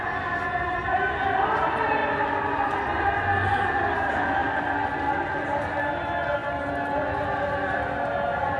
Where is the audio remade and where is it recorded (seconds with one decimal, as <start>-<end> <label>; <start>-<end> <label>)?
0.0-4.4 recorded; 4.4-5.4 remade; 5.4-6.4 recorded; 6.4-8.0 remade; 8.0-8.6 recorded